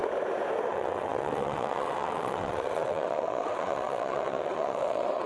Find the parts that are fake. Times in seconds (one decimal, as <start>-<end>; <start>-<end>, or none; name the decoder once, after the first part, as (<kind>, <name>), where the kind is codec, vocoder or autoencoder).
0.7-5.3 (vocoder, WaveNeXt)